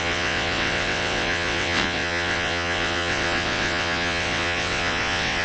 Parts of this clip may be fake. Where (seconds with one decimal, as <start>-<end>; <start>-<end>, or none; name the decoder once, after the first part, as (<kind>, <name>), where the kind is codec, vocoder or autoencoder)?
0.0-5.4 (vocoder, WaveNeXt)

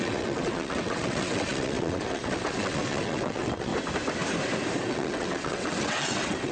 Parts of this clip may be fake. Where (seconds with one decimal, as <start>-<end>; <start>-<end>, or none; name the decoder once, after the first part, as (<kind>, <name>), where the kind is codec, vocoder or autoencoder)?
0.0-3.7 (vocoder, WaveNeXt); 4.9-6.5